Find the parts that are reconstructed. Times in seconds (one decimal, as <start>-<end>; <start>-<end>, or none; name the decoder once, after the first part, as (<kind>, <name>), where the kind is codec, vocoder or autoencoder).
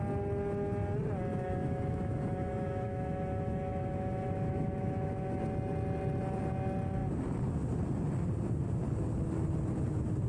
1.3-5.4 (autoencoder, DAC-VAE)